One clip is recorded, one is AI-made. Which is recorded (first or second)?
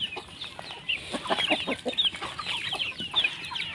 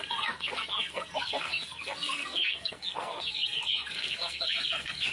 first